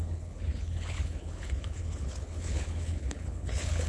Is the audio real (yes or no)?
no